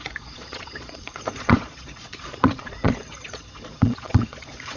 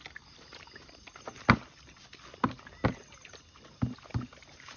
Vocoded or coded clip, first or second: first